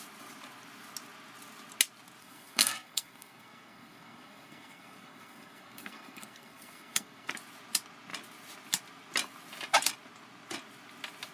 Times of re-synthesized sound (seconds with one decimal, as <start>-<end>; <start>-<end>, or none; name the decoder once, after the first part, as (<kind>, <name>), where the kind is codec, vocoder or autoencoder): 2.2-7.3 (codec, SNAC)